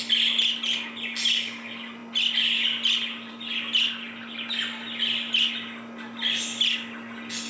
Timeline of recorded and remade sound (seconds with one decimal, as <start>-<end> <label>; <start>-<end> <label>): 0.0-7.5 recorded